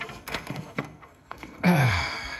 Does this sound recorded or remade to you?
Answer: remade